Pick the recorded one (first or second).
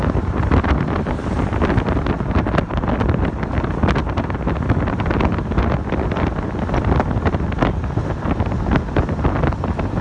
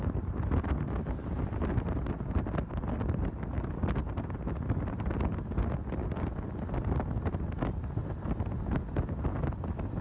second